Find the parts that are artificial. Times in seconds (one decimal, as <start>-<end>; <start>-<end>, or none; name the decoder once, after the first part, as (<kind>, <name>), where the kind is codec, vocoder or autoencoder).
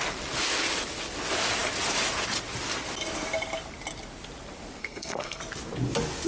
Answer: 4.8-5.4 (codec, SNAC)